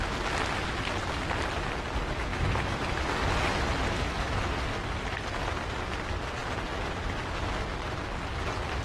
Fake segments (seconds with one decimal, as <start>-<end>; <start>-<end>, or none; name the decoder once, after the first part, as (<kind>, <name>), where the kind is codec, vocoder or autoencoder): 2.3-3.1 (autoencoder, DAC-VAE)